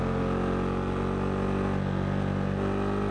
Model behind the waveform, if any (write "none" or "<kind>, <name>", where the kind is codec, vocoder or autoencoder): none